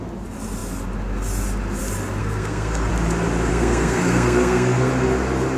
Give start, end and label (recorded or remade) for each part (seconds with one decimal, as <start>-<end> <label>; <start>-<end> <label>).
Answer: 0.0-2.2 recorded; 2.2-2.9 remade; 2.9-3.5 recorded; 3.5-4.9 remade; 4.9-5.6 recorded